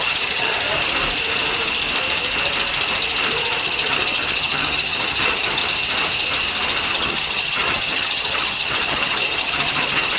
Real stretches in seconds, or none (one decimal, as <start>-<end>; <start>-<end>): 0.5-3.6; 5.6-6.9

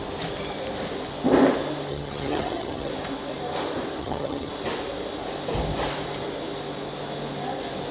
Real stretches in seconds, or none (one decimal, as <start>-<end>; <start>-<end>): 0.0-1.9; 2.9-4.0; 4.5-7.9

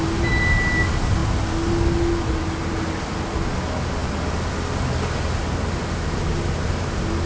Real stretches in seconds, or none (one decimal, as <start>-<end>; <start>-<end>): 0.0-7.3

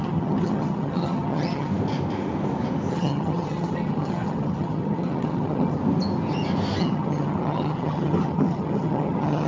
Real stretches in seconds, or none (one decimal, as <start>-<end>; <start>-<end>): 1.7-2.9; 5.8-6.8

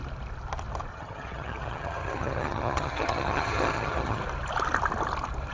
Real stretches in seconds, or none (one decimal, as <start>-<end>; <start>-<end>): 0.0-0.9; 4.2-5.5

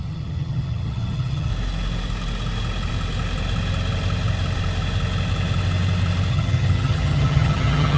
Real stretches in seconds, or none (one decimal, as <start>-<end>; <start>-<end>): 1.5-6.3

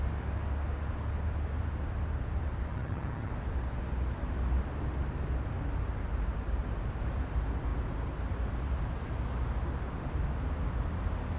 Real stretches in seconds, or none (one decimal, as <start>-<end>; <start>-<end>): 0.0-2.7; 3.3-11.4